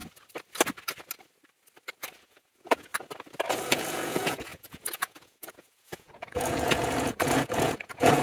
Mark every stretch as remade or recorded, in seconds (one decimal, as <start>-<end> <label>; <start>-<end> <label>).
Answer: 0.0-2.2 recorded; 2.2-2.9 remade; 2.9-3.5 recorded; 3.5-8.2 remade